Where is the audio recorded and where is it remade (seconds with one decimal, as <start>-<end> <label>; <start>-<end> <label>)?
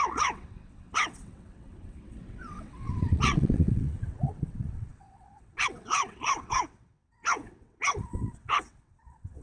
0.0-9.4 remade